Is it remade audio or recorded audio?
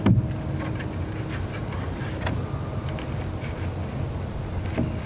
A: recorded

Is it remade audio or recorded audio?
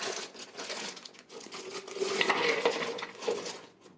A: remade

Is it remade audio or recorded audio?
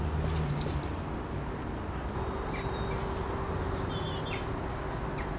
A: recorded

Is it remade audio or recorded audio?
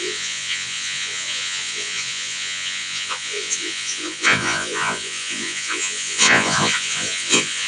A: remade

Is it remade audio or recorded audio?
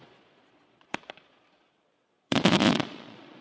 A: remade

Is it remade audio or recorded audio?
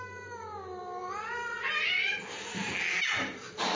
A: recorded